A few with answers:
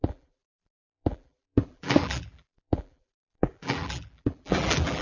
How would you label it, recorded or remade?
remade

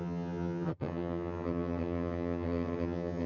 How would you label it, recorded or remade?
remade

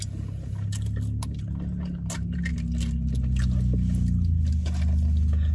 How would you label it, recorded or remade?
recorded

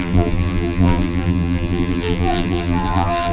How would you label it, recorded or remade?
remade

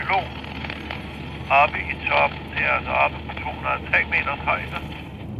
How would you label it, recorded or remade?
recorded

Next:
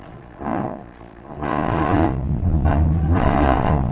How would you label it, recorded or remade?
remade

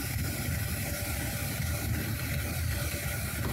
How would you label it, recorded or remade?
recorded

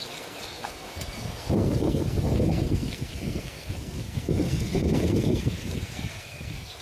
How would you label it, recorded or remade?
remade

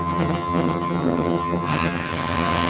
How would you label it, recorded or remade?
remade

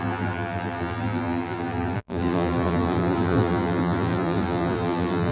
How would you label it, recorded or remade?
remade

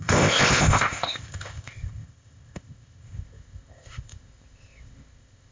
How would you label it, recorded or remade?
remade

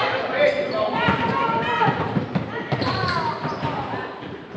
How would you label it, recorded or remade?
recorded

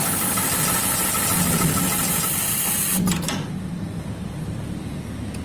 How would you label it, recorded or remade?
recorded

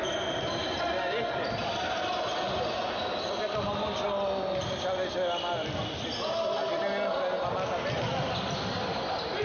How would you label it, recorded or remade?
recorded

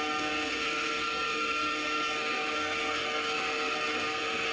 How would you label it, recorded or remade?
remade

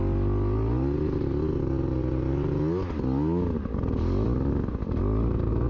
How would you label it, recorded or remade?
recorded